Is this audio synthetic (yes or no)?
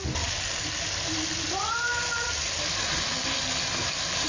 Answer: yes